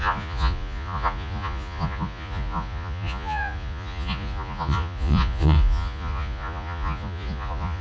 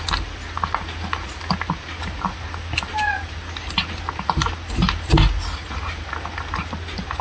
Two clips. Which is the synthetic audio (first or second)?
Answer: first